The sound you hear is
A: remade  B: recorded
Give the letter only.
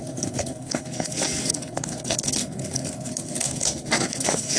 A